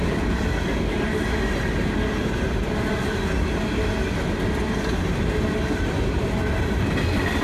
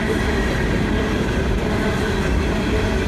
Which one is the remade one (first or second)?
second